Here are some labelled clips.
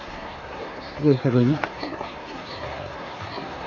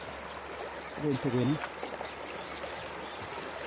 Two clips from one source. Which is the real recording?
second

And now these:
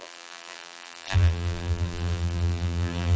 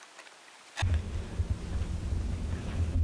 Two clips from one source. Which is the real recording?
second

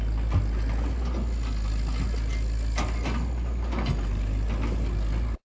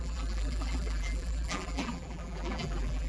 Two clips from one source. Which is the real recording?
first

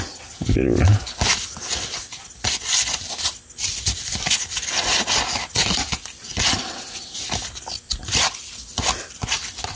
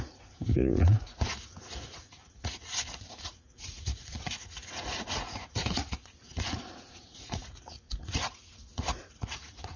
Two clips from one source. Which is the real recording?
first